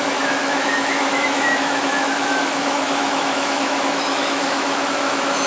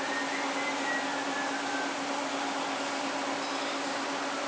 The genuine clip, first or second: second